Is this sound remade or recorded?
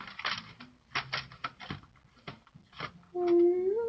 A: recorded